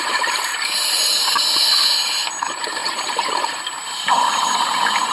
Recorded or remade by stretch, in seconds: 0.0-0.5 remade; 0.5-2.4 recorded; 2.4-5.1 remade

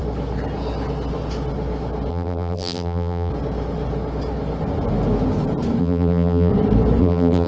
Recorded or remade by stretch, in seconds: 0.0-2.1 recorded; 2.1-3.3 remade; 3.3-5.8 recorded; 5.8-6.5 remade; 6.5-7.0 recorded; 7.0-7.5 remade

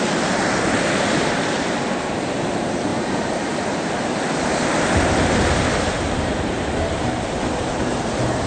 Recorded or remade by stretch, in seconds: 0.0-8.5 remade

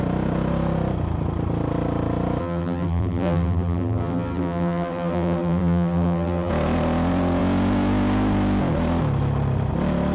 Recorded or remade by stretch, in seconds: 0.0-2.4 recorded; 2.4-6.5 remade; 6.5-10.1 recorded

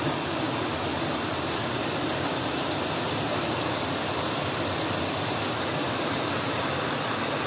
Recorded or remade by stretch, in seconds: 0.0-0.9 recorded; 0.9-5.4 remade; 5.4-7.5 recorded

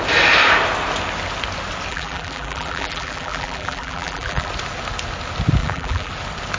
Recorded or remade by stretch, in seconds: 0.0-1.9 recorded; 1.9-4.5 remade; 4.5-5.6 recorded; 5.6-6.1 remade; 6.1-6.6 recorded

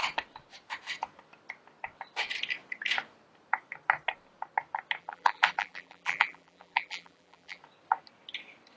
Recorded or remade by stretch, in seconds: 0.0-5.0 recorded; 5.0-7.6 remade; 7.6-8.8 recorded